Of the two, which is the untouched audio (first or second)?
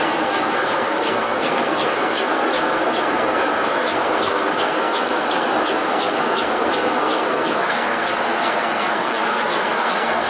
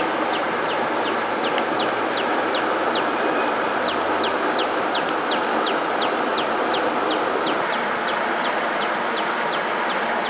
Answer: second